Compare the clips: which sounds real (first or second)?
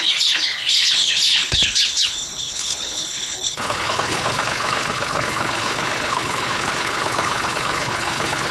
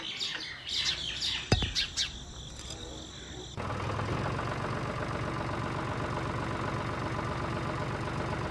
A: second